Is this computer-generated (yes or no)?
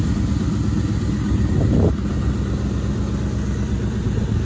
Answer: no